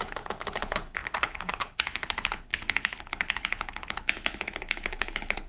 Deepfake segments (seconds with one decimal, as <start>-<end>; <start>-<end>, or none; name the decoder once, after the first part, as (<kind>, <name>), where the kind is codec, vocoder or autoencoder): 0.0-5.5 (codec, HILCodec)